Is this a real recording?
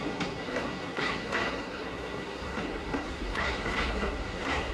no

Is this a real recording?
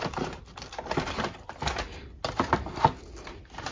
yes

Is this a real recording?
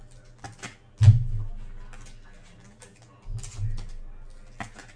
yes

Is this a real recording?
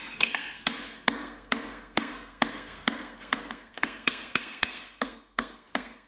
no